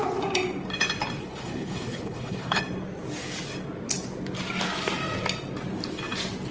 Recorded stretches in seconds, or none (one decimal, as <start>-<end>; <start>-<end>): 0.0-1.2; 2.6-6.5